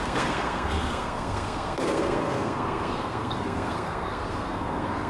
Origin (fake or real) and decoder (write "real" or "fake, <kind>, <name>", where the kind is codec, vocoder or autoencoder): fake, codec, SNAC